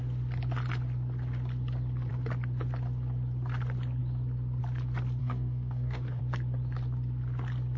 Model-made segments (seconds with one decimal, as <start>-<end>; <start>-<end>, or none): 5.2-6.2